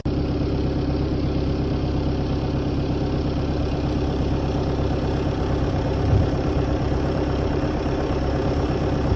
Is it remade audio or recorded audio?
remade